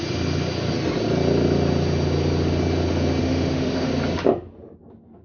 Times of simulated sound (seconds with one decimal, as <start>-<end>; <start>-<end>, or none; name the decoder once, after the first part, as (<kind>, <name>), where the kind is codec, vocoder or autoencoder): 3.2-3.9 (autoencoder, DAC-VAE)